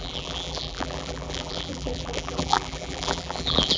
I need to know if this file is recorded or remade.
remade